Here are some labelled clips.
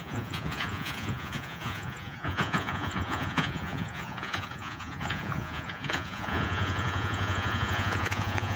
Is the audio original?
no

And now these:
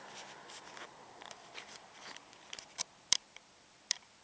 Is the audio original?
no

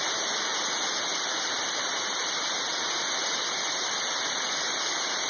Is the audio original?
no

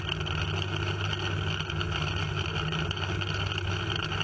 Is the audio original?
yes